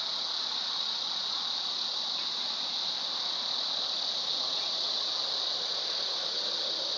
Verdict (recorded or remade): recorded